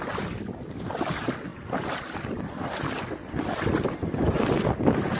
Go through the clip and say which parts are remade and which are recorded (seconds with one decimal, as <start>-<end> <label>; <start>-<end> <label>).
0.0-5.2 recorded